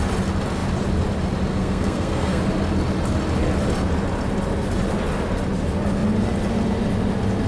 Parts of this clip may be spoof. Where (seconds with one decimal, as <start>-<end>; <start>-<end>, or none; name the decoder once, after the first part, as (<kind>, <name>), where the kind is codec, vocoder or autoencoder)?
1.5-2.4 (codec, SNAC)